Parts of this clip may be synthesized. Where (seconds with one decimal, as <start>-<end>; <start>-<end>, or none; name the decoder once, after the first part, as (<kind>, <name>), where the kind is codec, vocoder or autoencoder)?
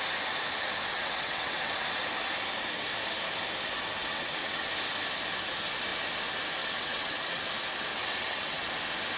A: 0.9-1.9 (vocoder, WaveNeXt); 4.0-4.7; 6.6-7.4; 7.9-8.7